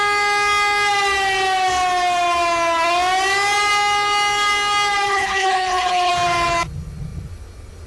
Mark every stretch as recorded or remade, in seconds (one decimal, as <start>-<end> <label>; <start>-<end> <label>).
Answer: 0.0-5.1 recorded; 5.1-6.1 remade; 6.1-7.9 recorded